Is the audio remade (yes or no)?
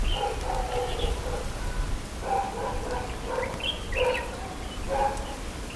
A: no